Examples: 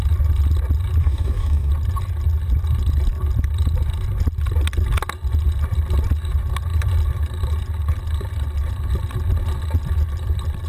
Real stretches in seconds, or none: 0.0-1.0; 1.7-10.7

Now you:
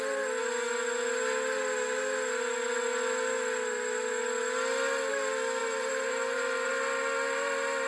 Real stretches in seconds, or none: 0.0-5.6; 6.7-7.9

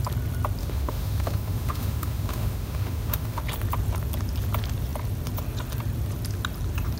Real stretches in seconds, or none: 0.0-0.6; 3.4-7.0

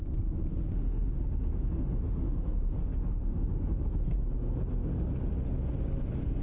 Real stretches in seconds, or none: 0.0-0.5; 3.9-6.4